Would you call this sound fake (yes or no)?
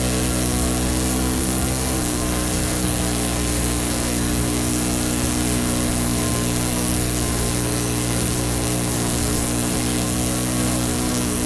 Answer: yes